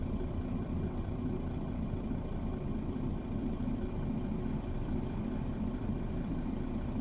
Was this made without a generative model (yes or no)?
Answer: no